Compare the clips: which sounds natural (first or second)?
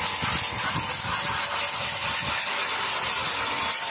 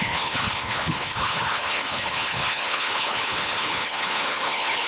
first